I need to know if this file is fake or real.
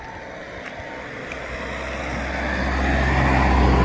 real